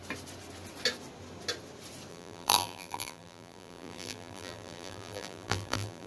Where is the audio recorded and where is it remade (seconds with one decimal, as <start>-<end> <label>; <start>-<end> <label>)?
0.0-2.1 recorded; 2.1-6.1 remade